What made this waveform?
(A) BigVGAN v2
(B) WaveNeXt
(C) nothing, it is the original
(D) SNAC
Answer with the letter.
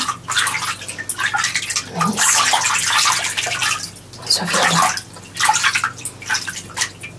C